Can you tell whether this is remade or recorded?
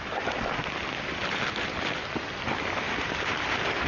recorded